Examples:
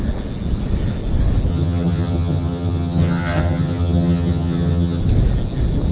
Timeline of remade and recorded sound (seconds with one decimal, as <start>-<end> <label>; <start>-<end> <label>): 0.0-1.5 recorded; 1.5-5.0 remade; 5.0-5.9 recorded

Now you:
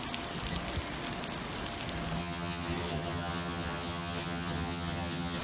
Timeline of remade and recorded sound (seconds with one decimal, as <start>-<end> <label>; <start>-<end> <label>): 0.0-2.2 recorded; 2.2-5.4 remade

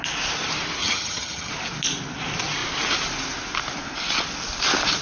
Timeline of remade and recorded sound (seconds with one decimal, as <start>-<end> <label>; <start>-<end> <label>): 0.0-0.8 recorded; 0.8-1.5 remade; 1.5-5.0 recorded

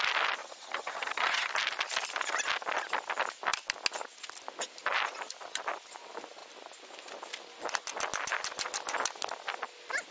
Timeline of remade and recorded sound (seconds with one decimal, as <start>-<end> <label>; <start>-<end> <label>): 0.0-0.4 recorded; 0.4-1.5 remade; 1.5-10.1 recorded

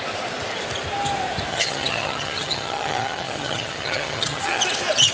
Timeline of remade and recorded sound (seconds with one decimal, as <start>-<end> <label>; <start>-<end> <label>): 0.0-1.5 recorded; 1.5-4.6 remade; 4.6-5.1 recorded